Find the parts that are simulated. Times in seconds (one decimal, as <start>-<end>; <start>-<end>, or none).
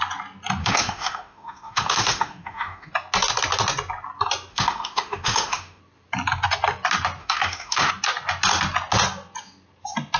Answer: 0.6-2.9; 4.5-5.8; 7.2-7.9